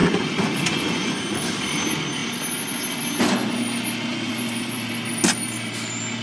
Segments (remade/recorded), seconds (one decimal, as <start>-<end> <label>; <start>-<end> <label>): 0.0-1.4 remade; 1.4-4.1 recorded; 4.1-4.9 remade; 4.9-6.2 recorded